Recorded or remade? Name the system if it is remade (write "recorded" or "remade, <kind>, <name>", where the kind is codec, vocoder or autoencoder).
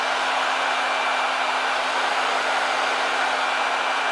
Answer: recorded